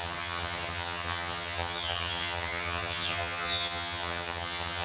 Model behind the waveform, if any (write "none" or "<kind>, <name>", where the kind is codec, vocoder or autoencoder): vocoder, HiFi-GAN